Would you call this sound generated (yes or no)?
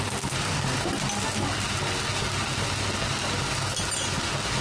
no